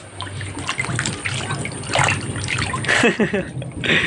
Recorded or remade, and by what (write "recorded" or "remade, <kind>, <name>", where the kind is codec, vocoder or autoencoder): recorded